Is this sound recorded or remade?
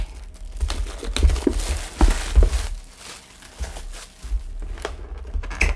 recorded